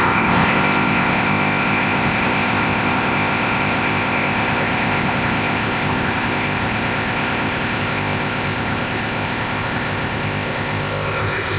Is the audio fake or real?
fake